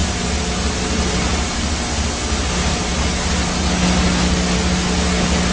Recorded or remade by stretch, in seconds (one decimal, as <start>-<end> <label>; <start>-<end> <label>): 0.0-5.5 recorded